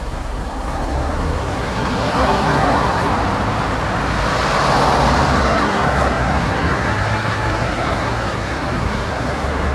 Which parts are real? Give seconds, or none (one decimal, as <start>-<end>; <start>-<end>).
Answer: 3.1-5.4